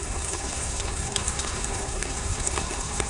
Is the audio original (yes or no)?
no